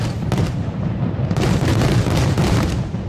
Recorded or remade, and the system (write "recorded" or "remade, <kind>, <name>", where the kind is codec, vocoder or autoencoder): remade, vocoder, BigVGAN v2